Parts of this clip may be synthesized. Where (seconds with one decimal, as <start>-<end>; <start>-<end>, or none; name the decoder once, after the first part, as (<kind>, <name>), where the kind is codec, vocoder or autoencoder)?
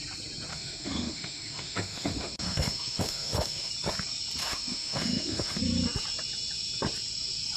0.5-3.7 (autoencoder, DAC-VAE); 4.4-5.6